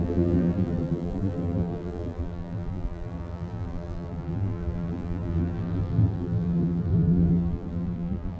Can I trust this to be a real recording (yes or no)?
no